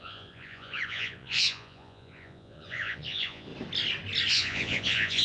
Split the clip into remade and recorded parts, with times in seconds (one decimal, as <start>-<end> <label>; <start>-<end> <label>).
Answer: 0.0-3.5 remade; 3.5-4.3 recorded; 4.3-5.2 remade